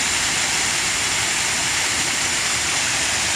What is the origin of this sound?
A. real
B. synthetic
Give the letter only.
A